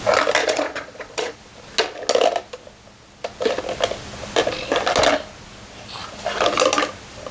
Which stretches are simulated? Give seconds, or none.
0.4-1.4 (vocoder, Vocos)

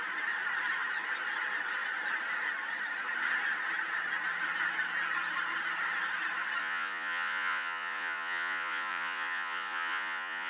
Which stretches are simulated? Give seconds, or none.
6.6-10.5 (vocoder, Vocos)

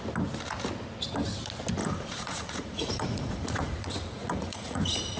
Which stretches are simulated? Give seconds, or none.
1.8-5.2 (vocoder, Vocos)

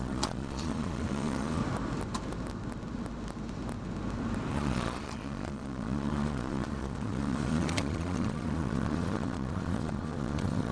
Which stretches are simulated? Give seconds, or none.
0.0-1.6 (vocoder, Vocos); 4.5-10.7

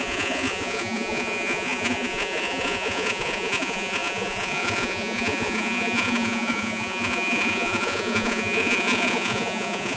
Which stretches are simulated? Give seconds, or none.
0.0-10.0 (vocoder, Vocos)

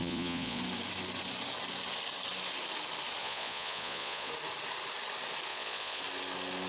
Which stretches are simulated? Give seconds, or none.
0.0-0.6 (vocoder, Vocos); 3.2-4.3; 5.5-6.0

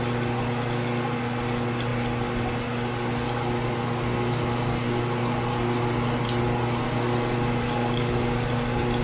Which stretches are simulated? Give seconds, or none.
none